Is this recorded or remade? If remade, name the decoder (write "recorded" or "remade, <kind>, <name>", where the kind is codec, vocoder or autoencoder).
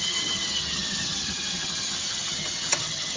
remade, vocoder, HiFi-GAN